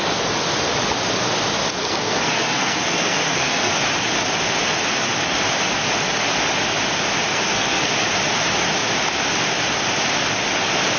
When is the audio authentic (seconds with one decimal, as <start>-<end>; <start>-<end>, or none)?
0.0-1.8; 3.8-7.3; 7.9-11.0